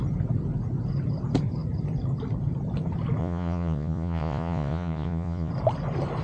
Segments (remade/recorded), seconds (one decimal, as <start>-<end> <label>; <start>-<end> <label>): 0.0-3.2 recorded; 3.2-5.5 remade; 5.5-6.2 recorded